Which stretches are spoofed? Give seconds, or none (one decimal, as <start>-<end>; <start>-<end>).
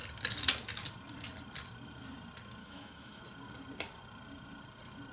2.6-3.2